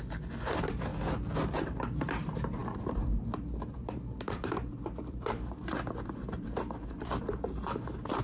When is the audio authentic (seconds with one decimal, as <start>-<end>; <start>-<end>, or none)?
0.9-1.5